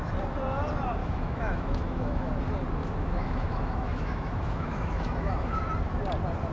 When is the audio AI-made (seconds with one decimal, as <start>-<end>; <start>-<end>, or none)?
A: 1.0-2.4; 2.8-5.6